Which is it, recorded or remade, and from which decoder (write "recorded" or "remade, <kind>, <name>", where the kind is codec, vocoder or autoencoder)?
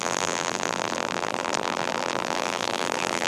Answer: remade, vocoder, BigVGAN v2